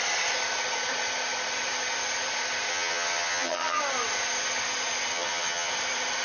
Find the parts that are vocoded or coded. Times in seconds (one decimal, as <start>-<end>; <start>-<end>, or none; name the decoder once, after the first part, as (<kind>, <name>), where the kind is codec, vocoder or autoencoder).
2.7-3.8 (vocoder, HiFi-GAN); 5.1-5.7